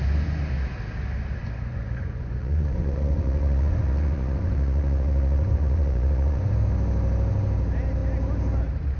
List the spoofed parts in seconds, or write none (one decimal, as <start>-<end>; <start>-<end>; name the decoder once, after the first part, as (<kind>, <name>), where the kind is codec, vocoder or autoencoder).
1.4-6.5 (vocoder, Vocos)